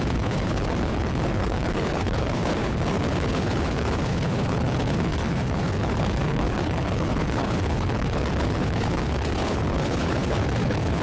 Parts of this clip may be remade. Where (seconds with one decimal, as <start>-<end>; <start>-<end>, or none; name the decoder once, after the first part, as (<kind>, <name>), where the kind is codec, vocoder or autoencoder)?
0.0-11.0 (codec, HILCodec)